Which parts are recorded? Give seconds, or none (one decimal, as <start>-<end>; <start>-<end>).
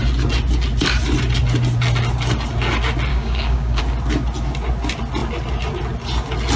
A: 0.0-3.1; 3.8-6.6